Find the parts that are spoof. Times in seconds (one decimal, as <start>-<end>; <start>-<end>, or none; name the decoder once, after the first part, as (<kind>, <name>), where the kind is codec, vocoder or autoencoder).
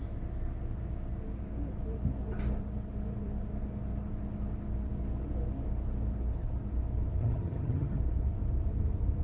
7.2-8.0 (vocoder, HiFi-GAN)